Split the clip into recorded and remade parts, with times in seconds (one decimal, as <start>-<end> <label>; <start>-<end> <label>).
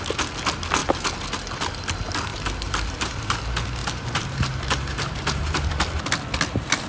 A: 0.0-2.3 recorded; 2.3-3.4 remade; 3.4-3.8 recorded; 3.8-5.7 remade; 5.7-6.9 recorded